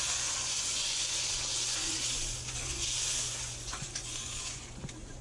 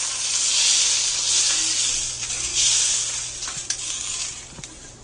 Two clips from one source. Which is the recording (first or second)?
second